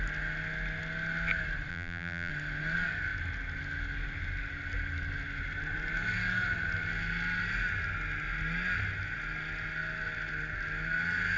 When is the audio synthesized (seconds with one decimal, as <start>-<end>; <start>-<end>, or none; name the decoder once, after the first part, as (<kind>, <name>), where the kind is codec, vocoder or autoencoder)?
1.7-2.3 (vocoder, BigVGAN v2)